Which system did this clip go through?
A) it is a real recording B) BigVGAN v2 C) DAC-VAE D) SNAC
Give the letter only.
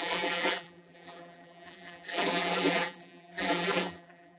B